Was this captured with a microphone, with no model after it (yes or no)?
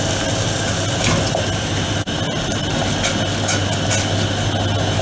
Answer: yes